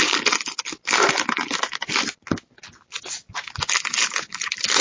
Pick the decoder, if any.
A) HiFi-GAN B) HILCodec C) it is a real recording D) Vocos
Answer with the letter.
C